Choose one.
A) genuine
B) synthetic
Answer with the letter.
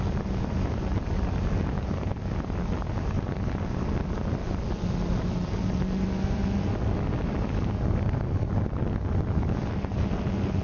A